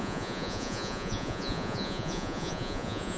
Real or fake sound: fake